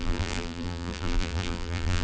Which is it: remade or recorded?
remade